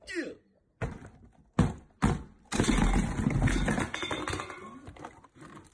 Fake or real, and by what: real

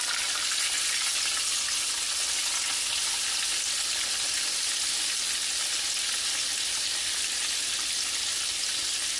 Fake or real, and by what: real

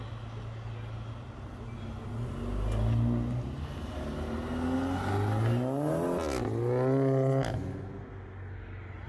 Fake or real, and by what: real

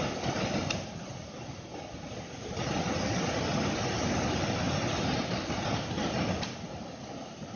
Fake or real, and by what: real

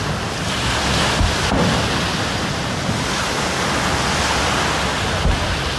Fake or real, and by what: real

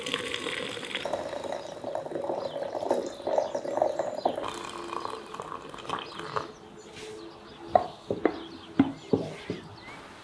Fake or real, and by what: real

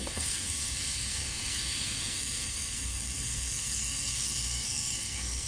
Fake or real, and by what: fake, codec, SNAC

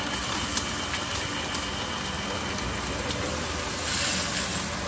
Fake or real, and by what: real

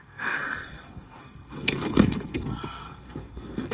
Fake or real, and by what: fake, codec, SNAC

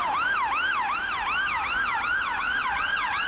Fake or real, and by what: real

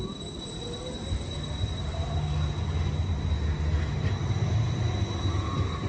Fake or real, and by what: real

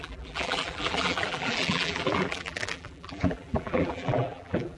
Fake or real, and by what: fake, vocoder, BigVGAN v2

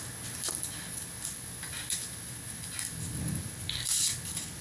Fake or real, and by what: real